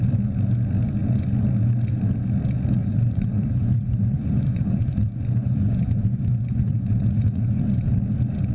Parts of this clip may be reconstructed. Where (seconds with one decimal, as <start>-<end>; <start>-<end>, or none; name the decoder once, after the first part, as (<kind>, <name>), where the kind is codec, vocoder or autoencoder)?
2.8-7.6 (vocoder, Vocos)